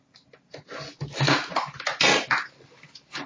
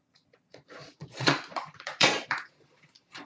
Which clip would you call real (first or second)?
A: first